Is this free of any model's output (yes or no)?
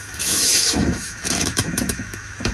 no